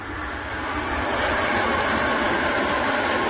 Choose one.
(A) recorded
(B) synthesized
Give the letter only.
B